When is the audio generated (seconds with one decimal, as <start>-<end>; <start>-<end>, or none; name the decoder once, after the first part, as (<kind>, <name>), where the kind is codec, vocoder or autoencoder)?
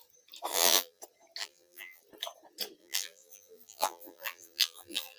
0.5-1.0 (vocoder, BigVGAN v2); 1.4-2.0; 2.8-5.2